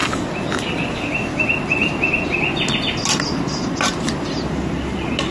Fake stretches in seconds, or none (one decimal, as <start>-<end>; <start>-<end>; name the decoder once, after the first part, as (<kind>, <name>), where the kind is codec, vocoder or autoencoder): none

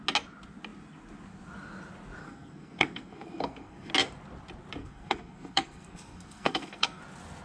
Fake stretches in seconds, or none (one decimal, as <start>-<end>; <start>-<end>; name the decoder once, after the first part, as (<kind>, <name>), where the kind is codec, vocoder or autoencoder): 2.2-3.9 (codec, SNAC); 4.8-7.0